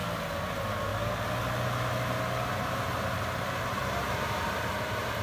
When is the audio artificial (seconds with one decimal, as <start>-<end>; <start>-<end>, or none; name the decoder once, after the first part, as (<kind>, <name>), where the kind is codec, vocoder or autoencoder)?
0.5-0.9 (vocoder, BigVGAN v2); 3.7-5.2